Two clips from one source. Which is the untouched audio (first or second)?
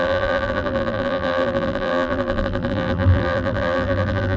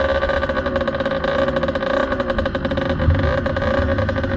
second